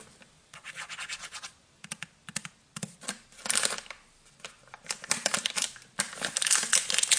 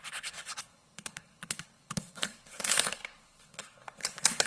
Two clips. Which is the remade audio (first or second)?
second